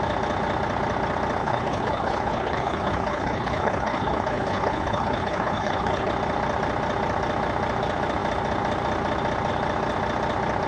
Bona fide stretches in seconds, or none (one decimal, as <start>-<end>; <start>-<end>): 0.0-1.4; 6.1-10.7